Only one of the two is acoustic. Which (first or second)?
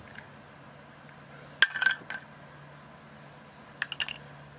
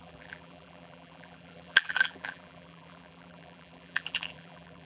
first